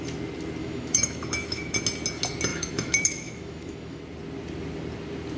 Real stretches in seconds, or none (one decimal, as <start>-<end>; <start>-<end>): 0.0-0.6; 1.8-2.5; 4.0-5.4

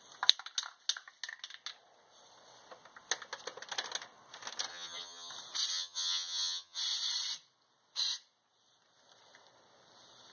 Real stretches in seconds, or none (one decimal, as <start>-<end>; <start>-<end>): 0.0-4.7; 5.3-5.7; 6.8-10.3

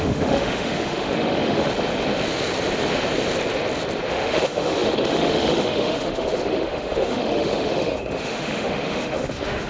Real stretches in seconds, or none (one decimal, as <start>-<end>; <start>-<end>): 1.7-4.1

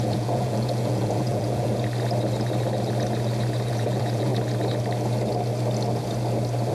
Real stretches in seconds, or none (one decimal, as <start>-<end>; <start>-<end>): 1.7-3.7; 4.3-6.7